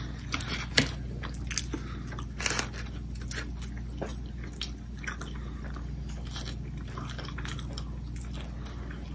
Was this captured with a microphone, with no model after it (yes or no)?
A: yes